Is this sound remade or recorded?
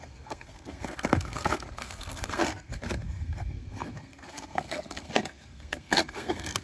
remade